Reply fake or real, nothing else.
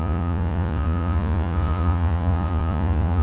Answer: fake